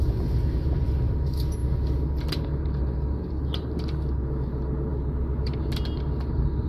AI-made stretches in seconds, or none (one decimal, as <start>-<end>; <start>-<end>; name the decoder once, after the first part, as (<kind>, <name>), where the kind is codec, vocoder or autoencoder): none